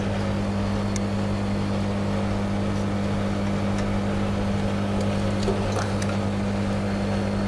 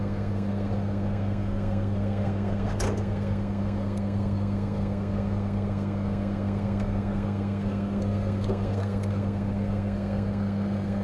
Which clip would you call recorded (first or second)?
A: first